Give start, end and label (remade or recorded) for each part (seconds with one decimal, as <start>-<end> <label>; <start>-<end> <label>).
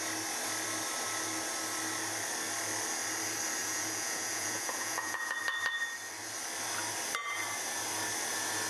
0.0-3.6 recorded; 3.6-5.4 remade; 5.4-8.7 recorded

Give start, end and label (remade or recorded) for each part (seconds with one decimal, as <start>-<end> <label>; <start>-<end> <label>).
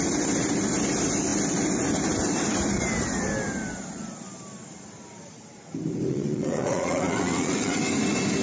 0.0-6.1 recorded; 6.1-7.8 remade; 7.8-8.4 recorded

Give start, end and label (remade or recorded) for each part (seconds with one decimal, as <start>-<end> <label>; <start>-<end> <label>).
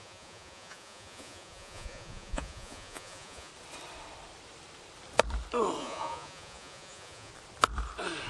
0.0-3.5 remade; 3.5-5.8 recorded; 5.8-7.3 remade; 7.3-8.3 recorded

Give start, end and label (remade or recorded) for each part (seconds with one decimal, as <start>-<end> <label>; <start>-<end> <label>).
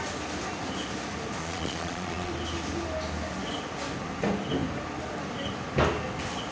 0.0-1.4 recorded; 1.4-2.3 remade; 2.3-6.5 recorded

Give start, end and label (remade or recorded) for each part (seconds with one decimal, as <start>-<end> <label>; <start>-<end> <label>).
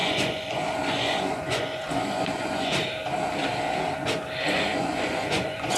0.0-2.8 remade; 2.8-4.5 recorded; 4.5-5.8 remade